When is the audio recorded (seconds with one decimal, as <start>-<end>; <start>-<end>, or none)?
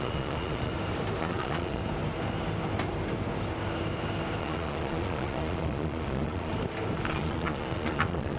0.7-1.2; 1.8-4.4; 6.5-7.1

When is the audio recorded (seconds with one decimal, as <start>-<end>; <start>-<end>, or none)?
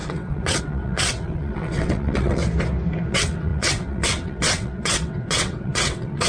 2.4-3.1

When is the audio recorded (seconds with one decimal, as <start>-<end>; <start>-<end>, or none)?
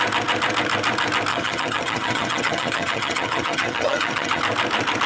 0.0-1.3; 4.4-5.1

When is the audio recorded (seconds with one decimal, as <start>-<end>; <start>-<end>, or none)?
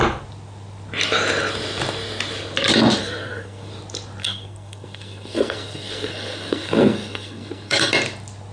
0.0-3.0; 3.7-4.2; 7.9-8.5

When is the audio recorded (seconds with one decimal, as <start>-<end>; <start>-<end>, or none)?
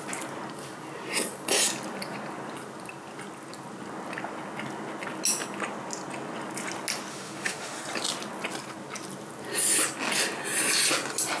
0.0-7.1; 7.8-11.4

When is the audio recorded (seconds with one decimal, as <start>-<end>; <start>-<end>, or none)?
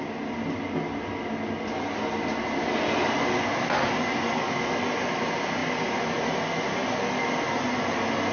0.0-8.3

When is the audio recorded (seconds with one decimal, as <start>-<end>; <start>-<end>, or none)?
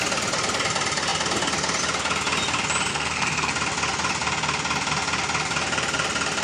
0.0-2.9; 3.5-6.4